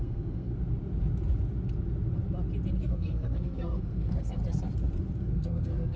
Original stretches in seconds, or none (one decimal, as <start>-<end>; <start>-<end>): 0.5-2.8; 4.4-5.2